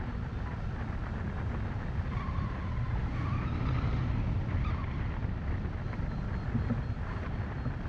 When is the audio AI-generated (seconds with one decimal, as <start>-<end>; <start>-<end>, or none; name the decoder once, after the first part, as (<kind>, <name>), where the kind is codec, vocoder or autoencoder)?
none